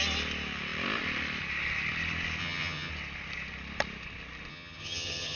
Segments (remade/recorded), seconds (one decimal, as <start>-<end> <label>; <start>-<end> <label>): 0.0-2.4 recorded; 2.4-2.9 remade; 2.9-4.5 recorded; 4.5-5.4 remade